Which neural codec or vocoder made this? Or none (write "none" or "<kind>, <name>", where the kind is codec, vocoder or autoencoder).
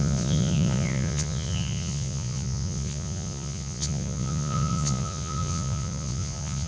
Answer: vocoder, Vocos